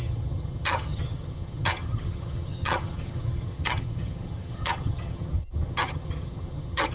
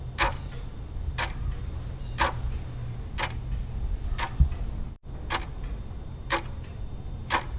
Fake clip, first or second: first